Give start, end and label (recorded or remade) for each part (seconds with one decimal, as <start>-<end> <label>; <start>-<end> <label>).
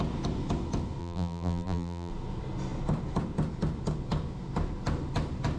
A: 0.0-1.0 recorded; 1.0-2.1 remade; 2.1-5.6 recorded